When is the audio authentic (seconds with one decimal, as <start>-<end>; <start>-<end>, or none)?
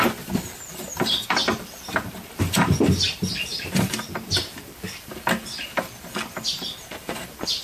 none